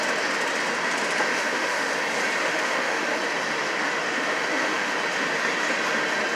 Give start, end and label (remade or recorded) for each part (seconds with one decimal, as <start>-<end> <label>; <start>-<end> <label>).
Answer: 0.0-1.3 recorded; 1.3-1.9 remade; 1.9-2.4 recorded; 2.4-3.0 remade; 3.0-4.0 recorded; 4.0-4.9 remade; 4.9-6.4 recorded